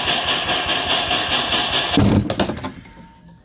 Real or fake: real